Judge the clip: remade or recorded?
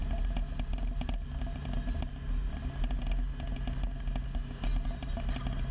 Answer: recorded